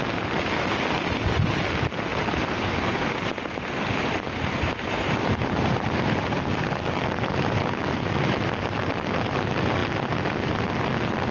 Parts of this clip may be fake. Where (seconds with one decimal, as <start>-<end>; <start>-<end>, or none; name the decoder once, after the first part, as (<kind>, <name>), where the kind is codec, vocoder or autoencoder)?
2.1-6.7 (vocoder, BigVGAN v2)